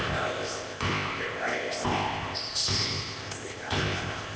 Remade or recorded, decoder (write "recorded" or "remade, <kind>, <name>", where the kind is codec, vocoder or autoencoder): remade, codec, ZipCodec